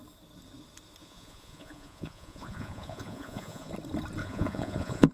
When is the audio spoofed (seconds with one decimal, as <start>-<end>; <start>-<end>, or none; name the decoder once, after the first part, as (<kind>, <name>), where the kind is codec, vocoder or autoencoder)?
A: 1.0-3.7 (vocoder, Vocos); 4.2-5.1